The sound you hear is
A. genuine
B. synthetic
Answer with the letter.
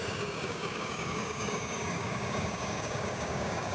B